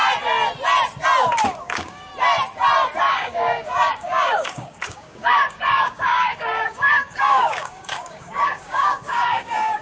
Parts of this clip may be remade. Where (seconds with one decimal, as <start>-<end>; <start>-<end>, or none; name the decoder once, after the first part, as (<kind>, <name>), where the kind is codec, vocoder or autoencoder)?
1.6-2.1 (codec, DAC); 3.1-9.8